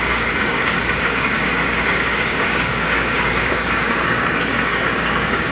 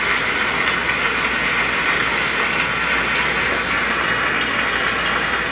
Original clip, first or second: second